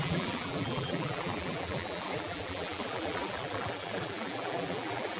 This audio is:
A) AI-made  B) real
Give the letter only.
A